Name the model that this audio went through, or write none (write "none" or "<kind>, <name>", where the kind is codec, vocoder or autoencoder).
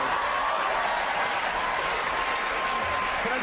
none